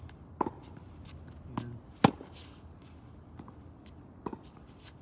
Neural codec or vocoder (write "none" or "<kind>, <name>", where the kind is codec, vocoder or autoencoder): none